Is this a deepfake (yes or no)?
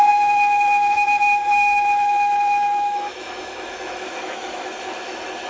yes